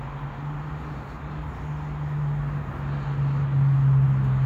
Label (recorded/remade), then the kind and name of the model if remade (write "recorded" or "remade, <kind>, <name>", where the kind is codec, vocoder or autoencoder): recorded